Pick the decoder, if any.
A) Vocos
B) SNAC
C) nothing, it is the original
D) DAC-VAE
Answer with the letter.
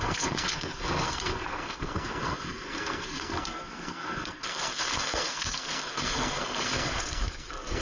B